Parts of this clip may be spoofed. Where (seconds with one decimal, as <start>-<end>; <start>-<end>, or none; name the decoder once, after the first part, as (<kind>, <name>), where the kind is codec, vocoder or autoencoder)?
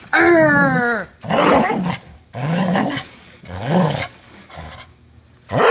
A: 2.1-5.2 (codec, DAC)